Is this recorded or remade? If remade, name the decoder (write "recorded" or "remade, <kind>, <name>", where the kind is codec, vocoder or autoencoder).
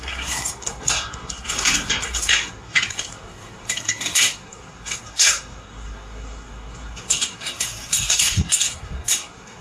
remade, codec, SNAC